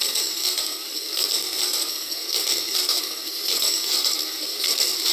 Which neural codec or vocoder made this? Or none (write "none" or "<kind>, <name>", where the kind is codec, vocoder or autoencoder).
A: codec, SNAC